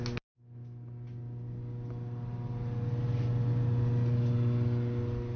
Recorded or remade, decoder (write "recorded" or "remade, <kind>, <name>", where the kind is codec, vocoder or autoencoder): recorded